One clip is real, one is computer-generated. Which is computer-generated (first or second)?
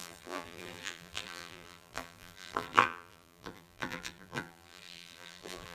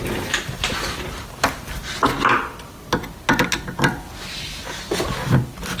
first